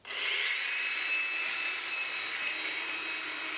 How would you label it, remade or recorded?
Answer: recorded